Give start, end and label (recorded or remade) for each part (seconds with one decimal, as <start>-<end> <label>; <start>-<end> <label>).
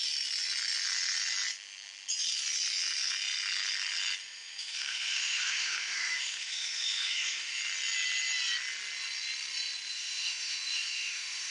0.0-4.2 recorded; 4.2-7.6 remade; 7.6-9.9 recorded; 9.9-11.5 remade